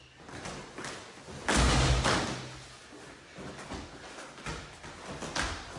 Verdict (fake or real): real